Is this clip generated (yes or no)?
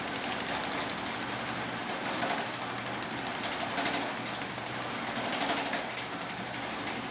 no